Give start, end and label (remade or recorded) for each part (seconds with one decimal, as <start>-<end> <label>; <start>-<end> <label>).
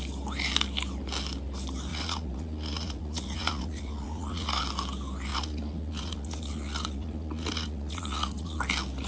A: 0.0-1.9 recorded; 1.9-4.6 remade; 4.6-5.3 recorded; 5.3-8.6 remade; 8.6-9.1 recorded